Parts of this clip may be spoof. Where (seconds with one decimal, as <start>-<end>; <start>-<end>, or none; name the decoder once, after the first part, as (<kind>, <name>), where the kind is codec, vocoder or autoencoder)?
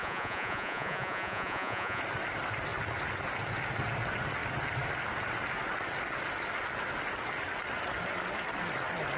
0.0-2.0 (vocoder, Vocos)